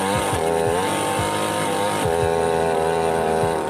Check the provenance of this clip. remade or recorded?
recorded